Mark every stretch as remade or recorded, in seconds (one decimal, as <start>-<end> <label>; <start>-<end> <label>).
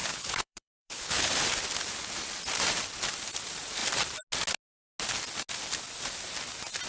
0.0-1.3 remade; 1.3-6.9 recorded